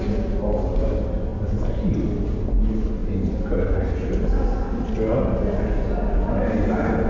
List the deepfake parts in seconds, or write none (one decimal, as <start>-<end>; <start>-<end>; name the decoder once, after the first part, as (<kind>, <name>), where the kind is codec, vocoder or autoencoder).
none